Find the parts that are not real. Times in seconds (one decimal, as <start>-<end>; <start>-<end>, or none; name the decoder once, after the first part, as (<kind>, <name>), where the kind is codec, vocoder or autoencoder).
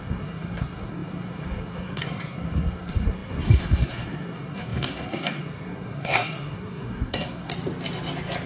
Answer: 0.0-7.5 (codec, SNAC)